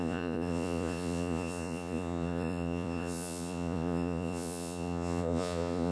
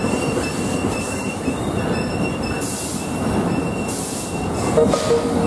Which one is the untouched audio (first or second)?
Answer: second